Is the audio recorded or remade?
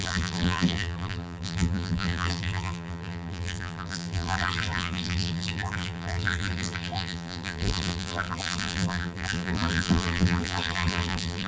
remade